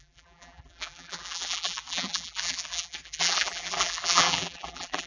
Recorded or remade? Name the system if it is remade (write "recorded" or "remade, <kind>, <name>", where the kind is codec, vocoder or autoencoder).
remade, vocoder, BigVGAN v2